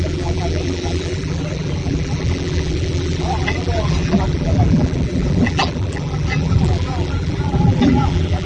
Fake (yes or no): yes